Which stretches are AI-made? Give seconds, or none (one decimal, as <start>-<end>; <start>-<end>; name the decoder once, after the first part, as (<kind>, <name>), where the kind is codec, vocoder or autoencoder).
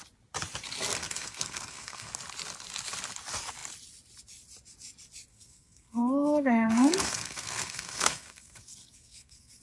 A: 1.0-2.1 (codec, SNAC); 5.3-9.6